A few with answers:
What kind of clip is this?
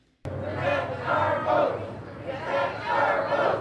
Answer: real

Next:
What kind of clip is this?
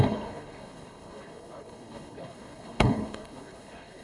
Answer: fake